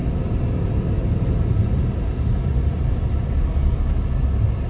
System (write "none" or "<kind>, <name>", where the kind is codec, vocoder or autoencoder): none